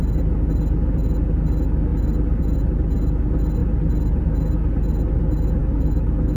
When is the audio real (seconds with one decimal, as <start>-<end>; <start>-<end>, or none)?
0.0-5.6